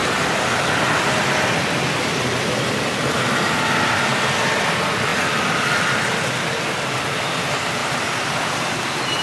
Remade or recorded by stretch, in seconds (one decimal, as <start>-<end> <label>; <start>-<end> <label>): 0.0-9.2 recorded

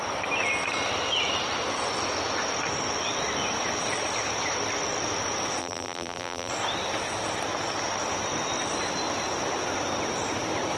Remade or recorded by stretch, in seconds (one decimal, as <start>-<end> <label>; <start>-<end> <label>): 0.0-5.6 recorded; 5.6-6.5 remade; 6.5-10.8 recorded

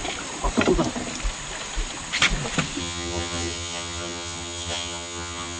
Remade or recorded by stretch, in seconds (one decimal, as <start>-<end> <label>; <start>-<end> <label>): 0.0-2.8 recorded; 2.8-5.6 remade

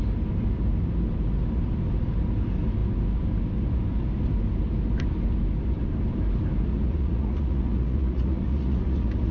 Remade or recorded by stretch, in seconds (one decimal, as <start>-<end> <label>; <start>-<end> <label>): 0.0-6.7 recorded; 6.7-9.3 remade

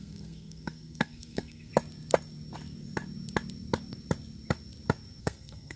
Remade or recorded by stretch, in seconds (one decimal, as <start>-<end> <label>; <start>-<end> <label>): 0.0-1.7 remade; 1.7-5.2 recorded; 5.2-5.8 remade

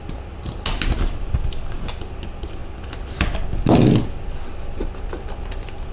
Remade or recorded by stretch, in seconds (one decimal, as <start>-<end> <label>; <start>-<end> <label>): 0.0-5.9 recorded

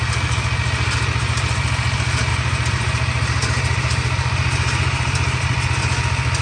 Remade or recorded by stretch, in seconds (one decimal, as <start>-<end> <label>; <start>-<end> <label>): 0.0-2.3 recorded; 2.3-5.4 remade; 5.4-6.4 recorded

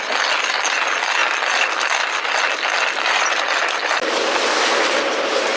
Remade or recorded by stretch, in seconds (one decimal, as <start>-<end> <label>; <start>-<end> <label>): 0.0-5.6 recorded